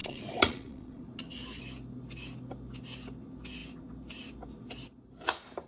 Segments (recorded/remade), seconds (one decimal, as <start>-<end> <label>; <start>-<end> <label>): 0.0-1.0 remade; 1.0-5.7 recorded